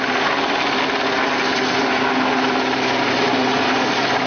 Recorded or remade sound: recorded